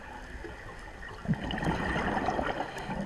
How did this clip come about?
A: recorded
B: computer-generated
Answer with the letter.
A